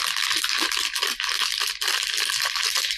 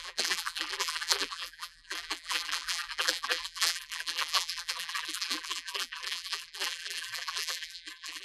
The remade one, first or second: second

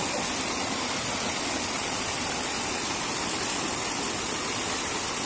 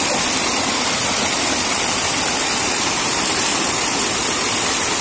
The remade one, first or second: second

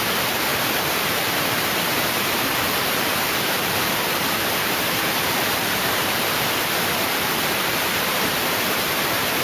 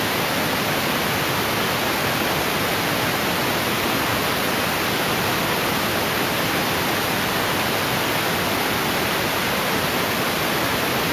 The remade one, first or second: first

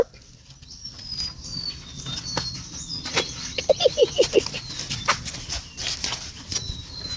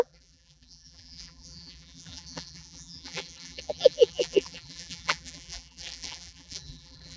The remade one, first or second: second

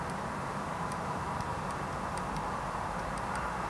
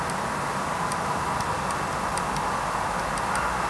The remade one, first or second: first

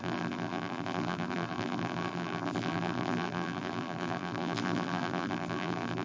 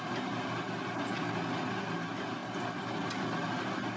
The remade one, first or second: first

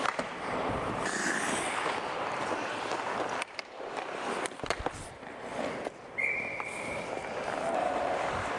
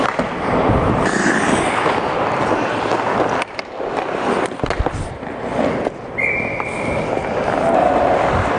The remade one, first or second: first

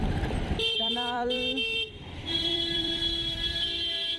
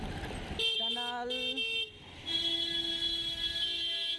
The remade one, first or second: first